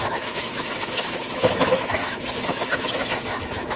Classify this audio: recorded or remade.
remade